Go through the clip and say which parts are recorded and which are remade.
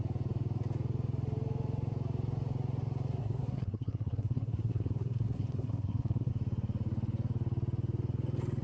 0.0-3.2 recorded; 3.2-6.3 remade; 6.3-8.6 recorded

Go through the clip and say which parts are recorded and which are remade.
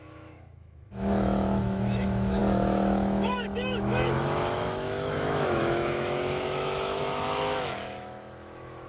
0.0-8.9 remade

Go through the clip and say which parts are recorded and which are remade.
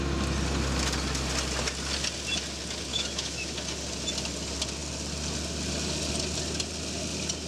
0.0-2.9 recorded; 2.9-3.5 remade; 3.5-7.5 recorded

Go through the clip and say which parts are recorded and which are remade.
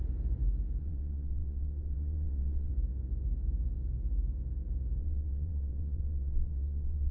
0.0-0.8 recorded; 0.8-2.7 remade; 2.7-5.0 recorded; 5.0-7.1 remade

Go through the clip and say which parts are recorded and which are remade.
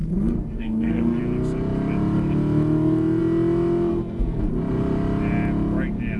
0.0-1.2 remade; 1.2-3.9 recorded; 3.9-4.5 remade; 4.5-6.2 recorded